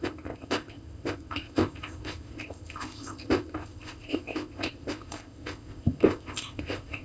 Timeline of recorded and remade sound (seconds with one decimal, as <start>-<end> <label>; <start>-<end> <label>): 0.0-7.0 remade